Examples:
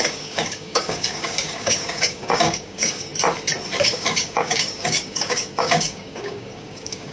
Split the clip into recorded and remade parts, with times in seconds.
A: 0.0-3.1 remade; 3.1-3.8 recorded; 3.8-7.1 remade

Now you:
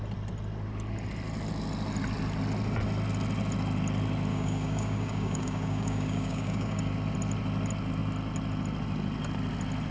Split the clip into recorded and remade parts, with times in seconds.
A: 0.0-4.3 recorded; 4.3-6.9 remade; 6.9-9.9 recorded

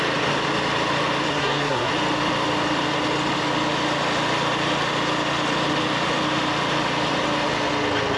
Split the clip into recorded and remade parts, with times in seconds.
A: 0.0-1.3 recorded; 1.3-1.9 remade; 1.9-8.2 recorded